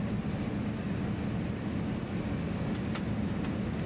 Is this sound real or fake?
real